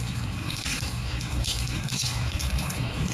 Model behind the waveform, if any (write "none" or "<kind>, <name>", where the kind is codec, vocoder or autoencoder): codec, SNAC